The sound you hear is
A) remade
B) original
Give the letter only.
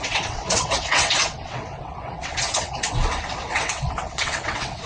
A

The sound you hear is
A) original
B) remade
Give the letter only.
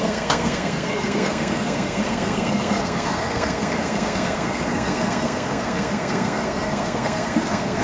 B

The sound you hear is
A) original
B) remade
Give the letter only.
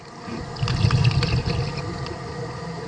A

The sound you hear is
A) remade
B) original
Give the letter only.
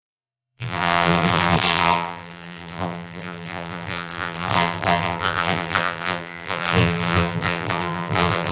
A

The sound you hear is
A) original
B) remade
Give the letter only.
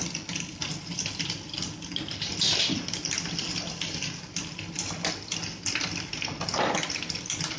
A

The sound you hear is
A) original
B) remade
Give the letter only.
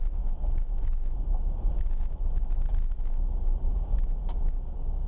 A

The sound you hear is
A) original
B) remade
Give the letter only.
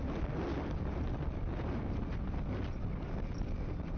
A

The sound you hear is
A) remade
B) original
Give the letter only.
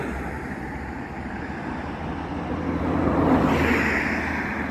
B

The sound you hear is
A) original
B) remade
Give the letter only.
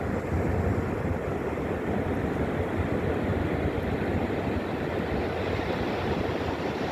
A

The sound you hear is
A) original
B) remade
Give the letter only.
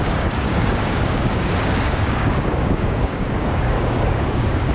B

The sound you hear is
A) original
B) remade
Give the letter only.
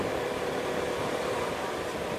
A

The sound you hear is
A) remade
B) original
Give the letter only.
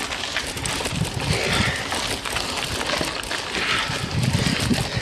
B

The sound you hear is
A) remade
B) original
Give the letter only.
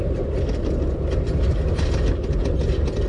B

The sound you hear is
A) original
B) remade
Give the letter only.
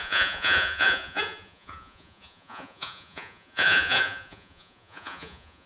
B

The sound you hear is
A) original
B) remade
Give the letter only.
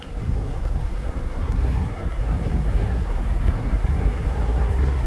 B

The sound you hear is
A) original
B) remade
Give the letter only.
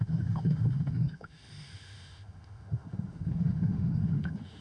B